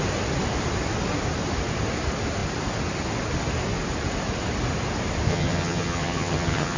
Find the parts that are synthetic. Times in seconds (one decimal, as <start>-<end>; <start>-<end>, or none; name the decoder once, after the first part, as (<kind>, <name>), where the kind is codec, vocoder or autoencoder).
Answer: 5.3-6.8 (vocoder, HiFi-GAN)